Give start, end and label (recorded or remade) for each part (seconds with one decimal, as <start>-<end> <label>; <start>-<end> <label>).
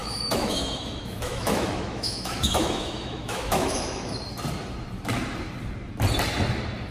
0.0-4.1 remade; 4.1-6.9 recorded